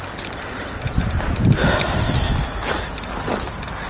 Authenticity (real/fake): real